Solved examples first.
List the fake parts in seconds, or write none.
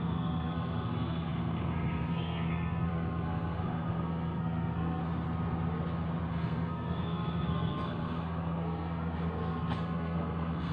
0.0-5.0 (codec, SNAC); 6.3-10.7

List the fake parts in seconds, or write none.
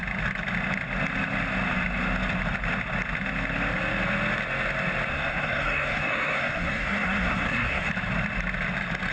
5.1-7.9 (codec, SNAC)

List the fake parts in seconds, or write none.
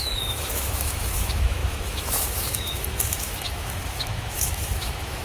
0.0-5.2 (autoencoder, DAC-VAE)